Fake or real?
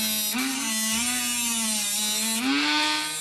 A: real